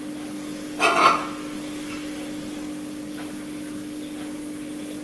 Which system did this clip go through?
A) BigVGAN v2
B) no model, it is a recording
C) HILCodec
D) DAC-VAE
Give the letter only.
B